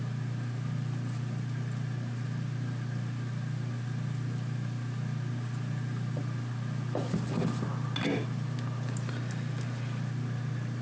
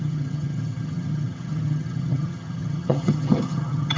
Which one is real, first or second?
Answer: first